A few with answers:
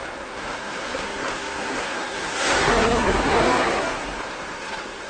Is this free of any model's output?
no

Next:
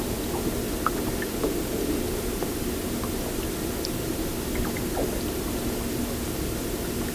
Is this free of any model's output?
yes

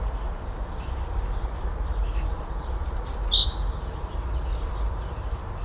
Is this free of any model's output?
yes